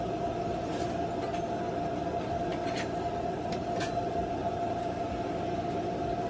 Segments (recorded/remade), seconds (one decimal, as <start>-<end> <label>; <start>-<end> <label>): 0.0-2.5 recorded; 2.5-3.6 remade; 3.6-4.4 recorded; 4.4-5.0 remade; 5.0-6.3 recorded